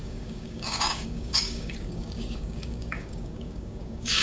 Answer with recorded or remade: remade